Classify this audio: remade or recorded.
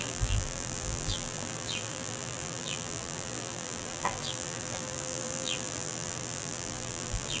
remade